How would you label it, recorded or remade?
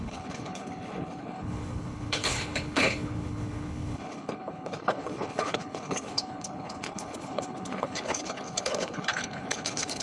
remade